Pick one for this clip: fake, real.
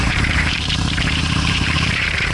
fake